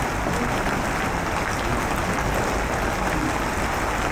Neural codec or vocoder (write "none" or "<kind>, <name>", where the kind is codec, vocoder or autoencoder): none